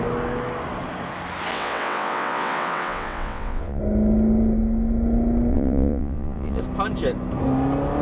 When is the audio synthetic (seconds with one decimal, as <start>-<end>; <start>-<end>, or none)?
1.5-3.8; 5.5-6.6